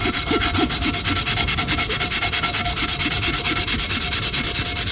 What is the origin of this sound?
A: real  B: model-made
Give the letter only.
A